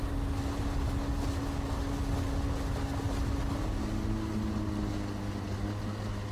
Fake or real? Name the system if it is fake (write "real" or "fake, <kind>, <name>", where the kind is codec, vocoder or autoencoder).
real